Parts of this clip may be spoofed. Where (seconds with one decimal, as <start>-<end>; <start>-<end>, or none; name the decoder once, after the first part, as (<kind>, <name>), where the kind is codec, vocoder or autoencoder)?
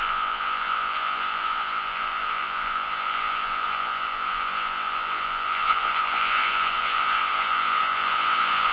0.0-8.7 (vocoder, Vocos)